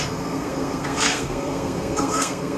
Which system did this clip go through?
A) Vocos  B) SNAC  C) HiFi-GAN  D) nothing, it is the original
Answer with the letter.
B